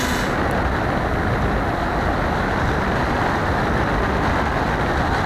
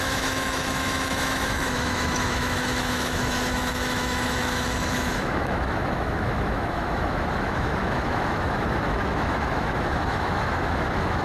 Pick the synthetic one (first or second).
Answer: second